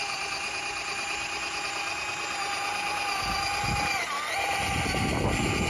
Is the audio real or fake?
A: real